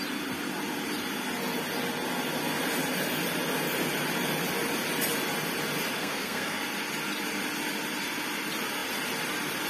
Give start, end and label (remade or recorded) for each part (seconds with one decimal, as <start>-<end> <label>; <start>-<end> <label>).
0.0-6.0 recorded; 6.0-6.6 remade; 6.6-9.7 recorded